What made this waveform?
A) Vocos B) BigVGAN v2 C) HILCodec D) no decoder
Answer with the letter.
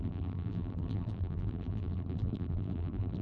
B